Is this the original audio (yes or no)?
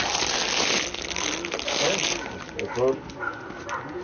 yes